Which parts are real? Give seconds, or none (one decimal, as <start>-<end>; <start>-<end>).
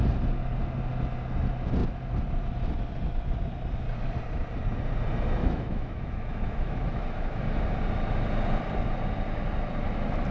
0.0-5.4; 7.4-10.3